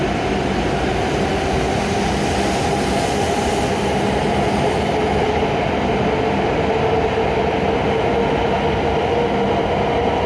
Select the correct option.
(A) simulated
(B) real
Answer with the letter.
B